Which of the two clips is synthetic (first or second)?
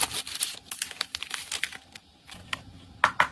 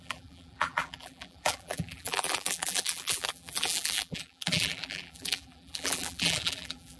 second